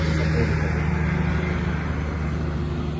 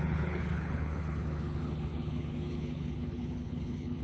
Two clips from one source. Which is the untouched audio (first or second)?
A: first